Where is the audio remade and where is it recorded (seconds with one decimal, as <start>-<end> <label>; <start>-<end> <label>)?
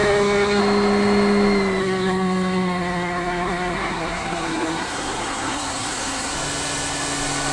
0.0-0.6 remade; 0.6-1.8 recorded; 1.8-6.3 remade; 6.3-7.5 recorded